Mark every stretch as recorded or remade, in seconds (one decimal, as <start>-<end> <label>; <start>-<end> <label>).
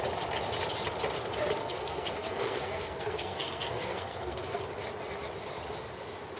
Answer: 0.0-1.6 recorded; 1.6-4.6 remade; 4.6-6.4 recorded